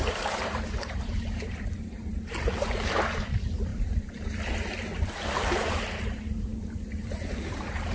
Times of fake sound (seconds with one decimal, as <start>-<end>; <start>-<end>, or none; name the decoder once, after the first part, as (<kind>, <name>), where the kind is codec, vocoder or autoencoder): 0.0-6.5 (vocoder, BigVGAN v2); 7.0-7.9